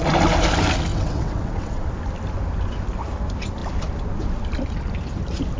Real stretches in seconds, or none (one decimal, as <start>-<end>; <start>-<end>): 0.0-0.9; 1.9-5.6